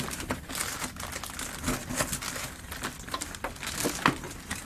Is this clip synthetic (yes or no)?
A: no